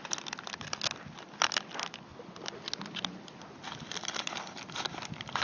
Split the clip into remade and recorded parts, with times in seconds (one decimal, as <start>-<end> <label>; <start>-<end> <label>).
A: 0.0-5.4 recorded